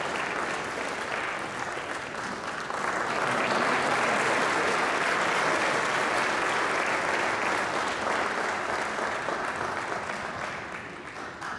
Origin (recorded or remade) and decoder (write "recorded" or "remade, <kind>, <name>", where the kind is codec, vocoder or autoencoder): recorded